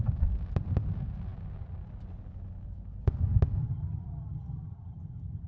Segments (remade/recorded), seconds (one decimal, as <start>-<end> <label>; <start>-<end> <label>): 0.0-3.6 recorded; 3.6-5.5 remade

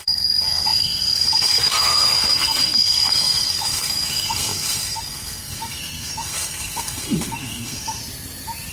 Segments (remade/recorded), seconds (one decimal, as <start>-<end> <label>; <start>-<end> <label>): 0.0-8.0 remade; 8.0-8.7 recorded

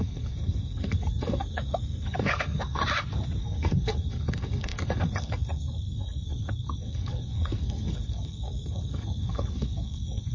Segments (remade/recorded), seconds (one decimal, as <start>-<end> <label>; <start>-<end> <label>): 0.0-2.8 remade; 2.8-3.4 recorded; 3.4-10.3 remade

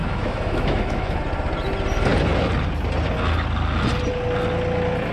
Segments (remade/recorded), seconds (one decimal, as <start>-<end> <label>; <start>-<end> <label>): 0.0-1.2 remade; 1.2-5.1 recorded

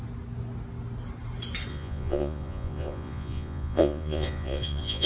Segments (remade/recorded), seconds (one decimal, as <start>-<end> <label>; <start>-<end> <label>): 0.0-1.7 recorded; 1.7-5.1 remade

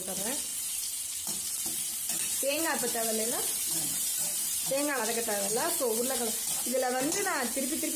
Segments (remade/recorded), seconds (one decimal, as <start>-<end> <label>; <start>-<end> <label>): 0.0-0.5 recorded; 0.5-5.0 remade; 5.0-8.0 recorded

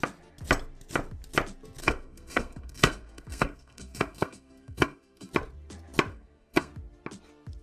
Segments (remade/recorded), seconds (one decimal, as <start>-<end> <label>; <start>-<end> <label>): 0.0-1.8 recorded; 1.8-5.3 remade; 5.3-6.1 recorded; 6.1-6.7 remade; 6.7-7.6 recorded

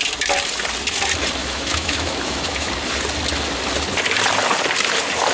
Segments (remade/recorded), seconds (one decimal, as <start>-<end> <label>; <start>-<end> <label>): 0.0-1.4 recorded; 1.4-2.7 remade; 2.7-5.3 recorded